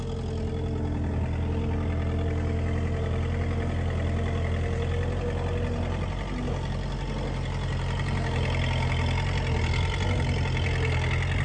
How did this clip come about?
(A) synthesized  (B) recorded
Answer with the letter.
B